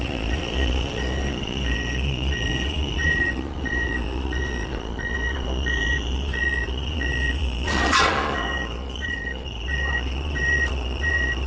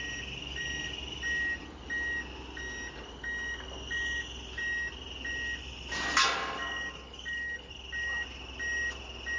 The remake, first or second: first